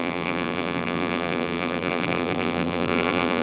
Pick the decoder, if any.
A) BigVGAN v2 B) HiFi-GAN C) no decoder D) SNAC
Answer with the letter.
A